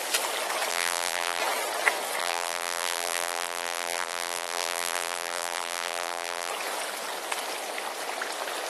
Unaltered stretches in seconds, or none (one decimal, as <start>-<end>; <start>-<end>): 0.0-0.7; 1.4-2.2; 6.5-8.7